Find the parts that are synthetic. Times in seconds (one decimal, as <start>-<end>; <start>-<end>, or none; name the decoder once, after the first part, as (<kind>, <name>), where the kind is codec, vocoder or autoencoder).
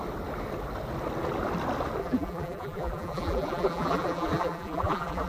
2.0-5.3 (vocoder, BigVGAN v2)